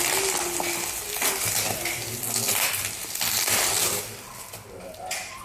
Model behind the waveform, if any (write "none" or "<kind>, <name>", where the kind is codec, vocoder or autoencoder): none